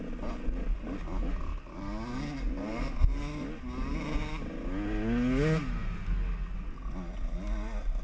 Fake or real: real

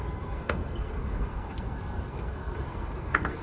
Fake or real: fake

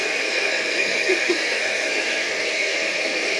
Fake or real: fake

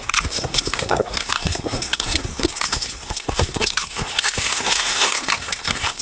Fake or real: fake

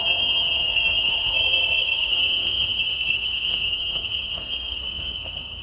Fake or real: fake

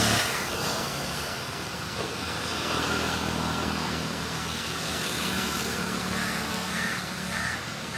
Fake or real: fake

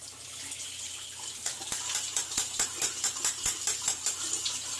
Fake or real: real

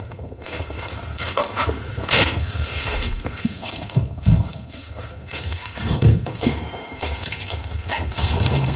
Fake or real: fake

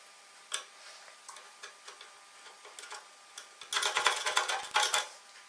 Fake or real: real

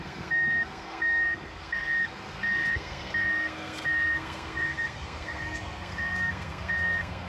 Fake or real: fake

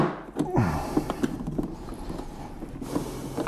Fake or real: real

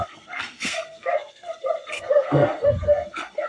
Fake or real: fake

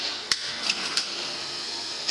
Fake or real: fake